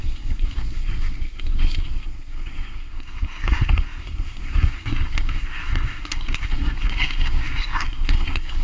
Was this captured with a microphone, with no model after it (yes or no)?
no